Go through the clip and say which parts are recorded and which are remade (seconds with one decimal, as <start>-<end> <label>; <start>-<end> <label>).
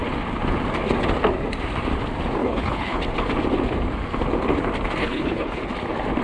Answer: 0.0-2.4 recorded; 2.4-3.0 remade; 3.0-5.0 recorded; 5.0-5.6 remade; 5.6-6.2 recorded